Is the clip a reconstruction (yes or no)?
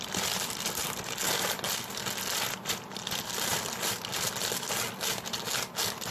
no